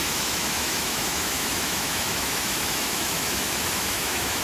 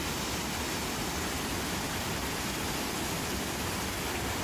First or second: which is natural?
second